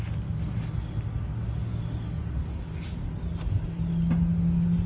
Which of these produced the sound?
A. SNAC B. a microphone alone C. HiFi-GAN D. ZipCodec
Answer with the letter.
B